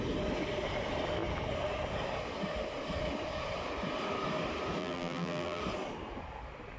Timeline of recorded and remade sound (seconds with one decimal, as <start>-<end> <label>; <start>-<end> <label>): 0.0-4.8 recorded; 4.8-5.6 remade; 5.6-6.8 recorded